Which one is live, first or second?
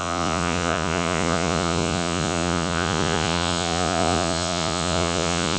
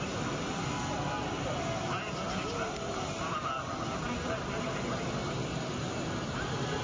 second